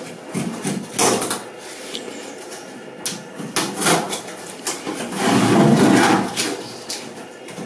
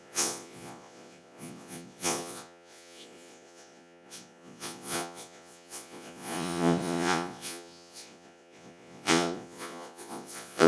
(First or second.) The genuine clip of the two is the first